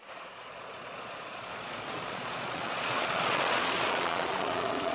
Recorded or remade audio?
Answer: remade